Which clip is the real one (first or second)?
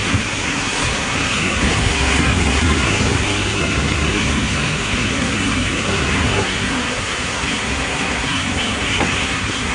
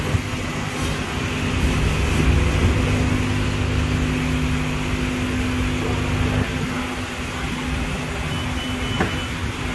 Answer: second